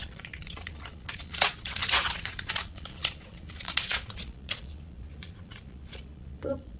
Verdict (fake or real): fake